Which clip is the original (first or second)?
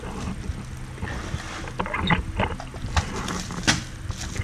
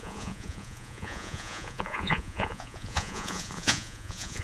first